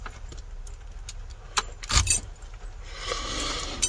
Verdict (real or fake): real